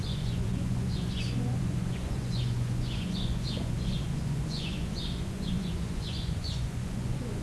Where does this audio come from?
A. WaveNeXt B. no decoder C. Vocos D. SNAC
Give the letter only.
C